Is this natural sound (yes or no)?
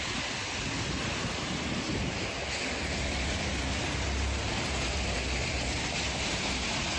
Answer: yes